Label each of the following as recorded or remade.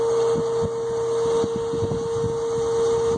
recorded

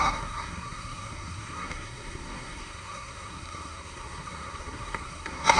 remade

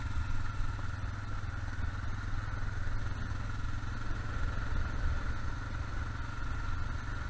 recorded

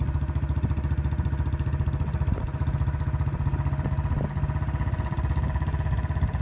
recorded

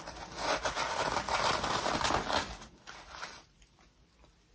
recorded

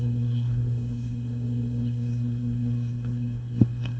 remade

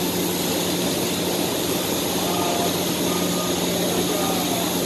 recorded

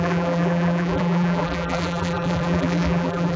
remade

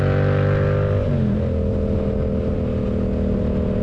recorded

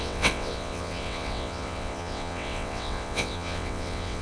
remade